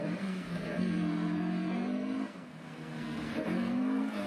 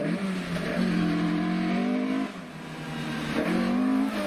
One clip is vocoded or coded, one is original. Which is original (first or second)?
second